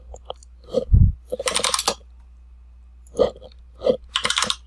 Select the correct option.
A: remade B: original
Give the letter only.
B